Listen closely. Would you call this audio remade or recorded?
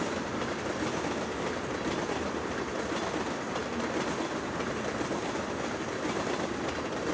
recorded